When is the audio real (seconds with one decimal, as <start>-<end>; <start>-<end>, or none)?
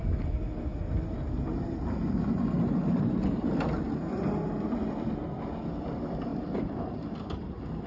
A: 0.0-7.9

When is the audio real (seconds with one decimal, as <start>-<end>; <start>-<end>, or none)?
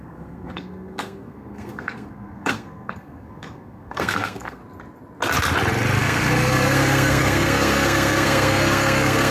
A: 4.6-6.0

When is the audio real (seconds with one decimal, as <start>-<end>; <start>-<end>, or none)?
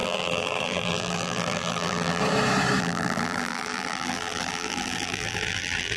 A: 2.2-2.8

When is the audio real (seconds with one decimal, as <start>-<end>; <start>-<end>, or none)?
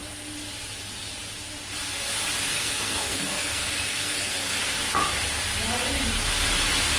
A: 0.0-2.5; 4.6-7.0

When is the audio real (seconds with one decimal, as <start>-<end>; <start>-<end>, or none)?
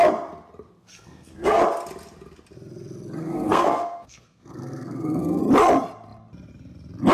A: 0.0-0.8; 1.6-3.2; 5.4-7.1